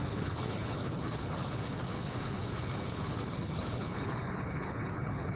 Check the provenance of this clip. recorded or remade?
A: remade